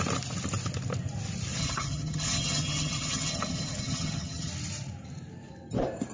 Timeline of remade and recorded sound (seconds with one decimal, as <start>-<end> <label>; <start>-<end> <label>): 0.0-1.6 recorded; 1.6-4.5 remade; 4.5-6.1 recorded